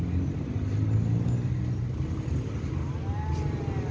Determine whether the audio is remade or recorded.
recorded